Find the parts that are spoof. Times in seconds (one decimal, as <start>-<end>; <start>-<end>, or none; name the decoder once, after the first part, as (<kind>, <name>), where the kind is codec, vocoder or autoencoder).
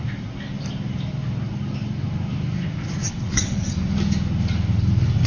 3.0-3.8 (vocoder, WaveNeXt)